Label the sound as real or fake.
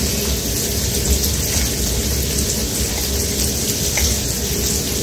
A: real